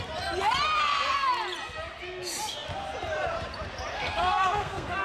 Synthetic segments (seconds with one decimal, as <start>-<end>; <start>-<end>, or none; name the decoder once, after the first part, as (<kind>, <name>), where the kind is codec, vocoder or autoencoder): 3.9-5.0 (codec, SNAC)